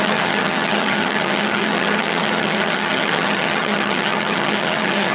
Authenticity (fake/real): fake